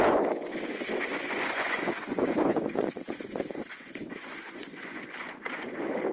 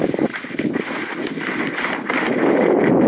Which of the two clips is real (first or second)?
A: second